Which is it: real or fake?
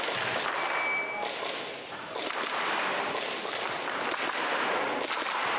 real